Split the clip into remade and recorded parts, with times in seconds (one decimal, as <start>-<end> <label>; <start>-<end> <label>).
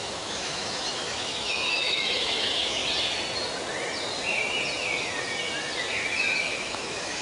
0.0-2.8 remade; 2.8-6.4 recorded; 6.4-7.2 remade